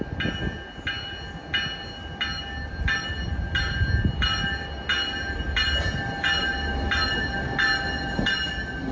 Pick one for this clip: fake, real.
real